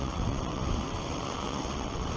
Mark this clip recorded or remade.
remade